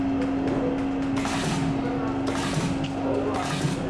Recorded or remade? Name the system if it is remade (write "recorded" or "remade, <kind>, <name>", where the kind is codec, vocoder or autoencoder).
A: recorded